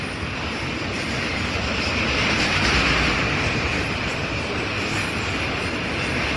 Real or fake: real